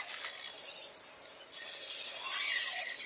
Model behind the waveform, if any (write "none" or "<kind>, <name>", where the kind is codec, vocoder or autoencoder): none